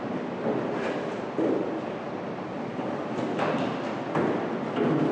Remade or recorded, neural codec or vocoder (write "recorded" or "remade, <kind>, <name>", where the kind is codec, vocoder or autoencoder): recorded